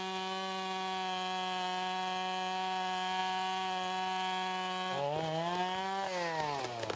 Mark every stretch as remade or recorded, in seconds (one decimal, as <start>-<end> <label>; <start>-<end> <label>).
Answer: 0.0-7.0 recorded